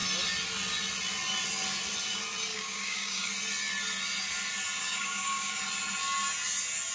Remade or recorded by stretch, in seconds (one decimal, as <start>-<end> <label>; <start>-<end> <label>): 0.0-2.5 recorded; 2.5-3.3 remade; 3.3-4.8 recorded; 4.8-5.6 remade; 5.6-6.9 recorded